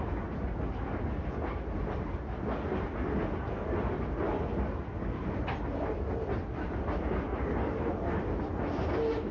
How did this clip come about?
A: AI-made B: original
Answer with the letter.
B